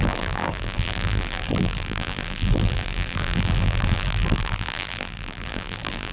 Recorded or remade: remade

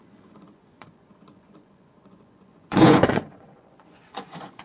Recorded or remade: remade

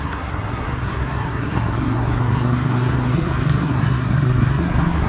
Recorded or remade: remade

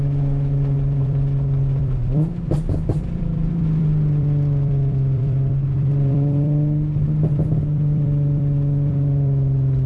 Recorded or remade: remade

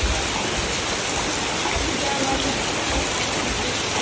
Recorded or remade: recorded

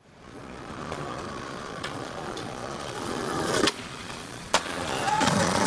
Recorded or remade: remade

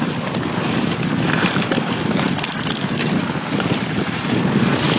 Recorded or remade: recorded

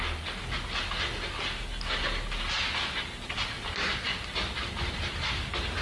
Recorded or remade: recorded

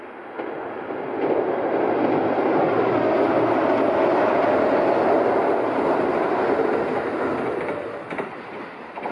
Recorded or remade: recorded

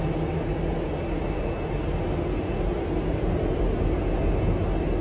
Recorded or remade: recorded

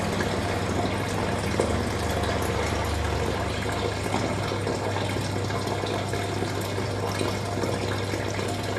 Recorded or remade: recorded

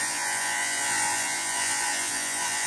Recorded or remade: remade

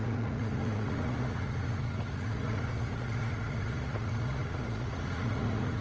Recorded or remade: remade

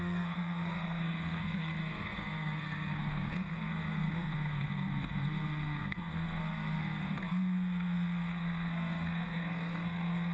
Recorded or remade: remade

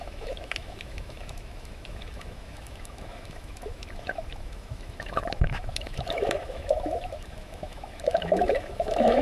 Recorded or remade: remade